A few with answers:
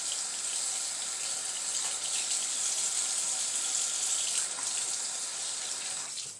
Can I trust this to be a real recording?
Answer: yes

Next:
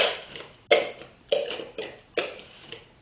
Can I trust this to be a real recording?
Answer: yes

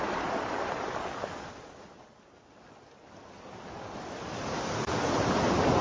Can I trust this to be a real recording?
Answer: yes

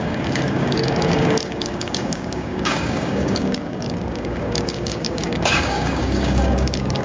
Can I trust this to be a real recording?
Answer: no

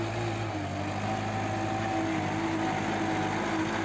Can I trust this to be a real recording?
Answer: yes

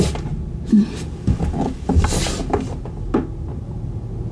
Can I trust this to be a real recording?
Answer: yes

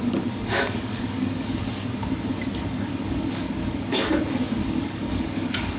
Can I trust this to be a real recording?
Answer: no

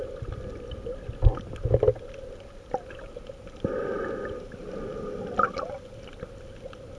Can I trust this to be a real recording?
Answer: yes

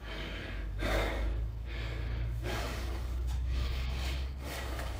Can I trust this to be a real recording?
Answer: no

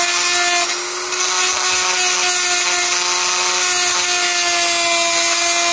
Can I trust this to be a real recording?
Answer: yes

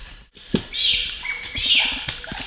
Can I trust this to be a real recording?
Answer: yes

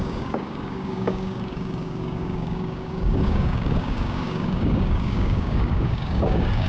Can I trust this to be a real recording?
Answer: no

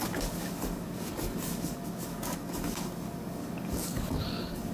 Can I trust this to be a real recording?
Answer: no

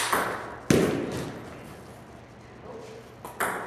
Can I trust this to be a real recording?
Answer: yes